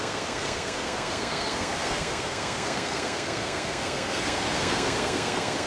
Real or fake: fake